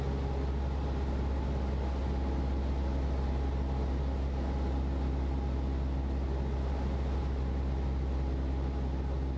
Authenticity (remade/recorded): recorded